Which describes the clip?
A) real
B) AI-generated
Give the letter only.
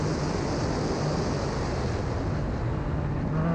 A